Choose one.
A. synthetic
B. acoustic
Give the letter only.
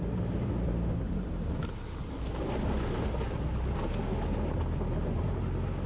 B